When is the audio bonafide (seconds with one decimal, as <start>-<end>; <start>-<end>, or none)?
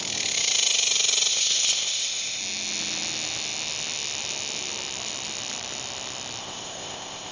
0.0-1.3; 2.4-6.4